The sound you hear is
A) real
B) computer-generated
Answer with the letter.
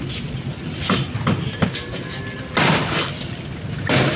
A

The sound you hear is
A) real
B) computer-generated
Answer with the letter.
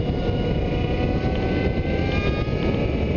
A